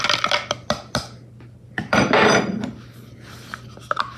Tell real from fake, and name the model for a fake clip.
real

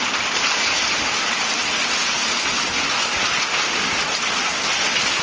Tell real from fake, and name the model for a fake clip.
real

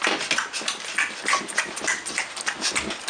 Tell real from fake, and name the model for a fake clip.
real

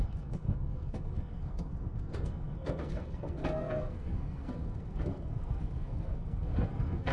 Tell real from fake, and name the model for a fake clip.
fake, codec, SNAC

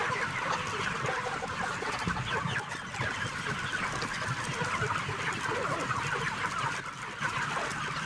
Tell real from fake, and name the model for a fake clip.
real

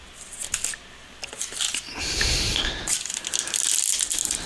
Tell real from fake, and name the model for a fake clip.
real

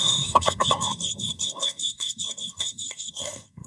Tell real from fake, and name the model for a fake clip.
fake, codec, SNAC